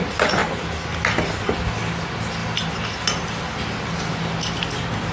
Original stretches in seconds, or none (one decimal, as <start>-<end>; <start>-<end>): 0.0-5.1